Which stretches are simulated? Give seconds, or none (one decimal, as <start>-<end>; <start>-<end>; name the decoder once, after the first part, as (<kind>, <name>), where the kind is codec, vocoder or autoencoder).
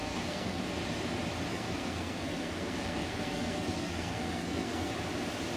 0.0-0.6 (codec, SNAC); 1.5-4.9